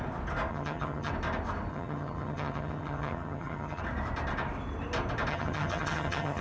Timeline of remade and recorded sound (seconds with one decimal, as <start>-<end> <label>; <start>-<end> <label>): 0.0-0.5 recorded; 0.5-1.1 remade; 1.1-1.7 recorded; 1.7-3.8 remade; 3.8-5.3 recorded; 5.3-6.4 remade